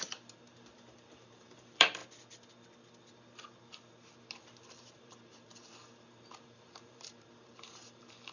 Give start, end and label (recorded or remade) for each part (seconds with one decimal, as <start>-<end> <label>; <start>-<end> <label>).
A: 0.0-2.0 remade; 2.0-4.3 recorded; 4.3-8.3 remade